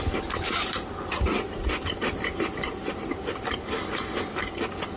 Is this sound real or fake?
fake